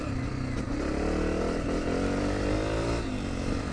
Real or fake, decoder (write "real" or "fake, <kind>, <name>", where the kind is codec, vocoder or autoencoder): real